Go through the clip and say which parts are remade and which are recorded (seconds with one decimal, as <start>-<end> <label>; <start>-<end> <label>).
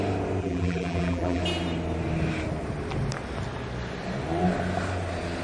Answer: 0.0-0.4 recorded; 0.4-1.4 remade; 1.4-5.4 recorded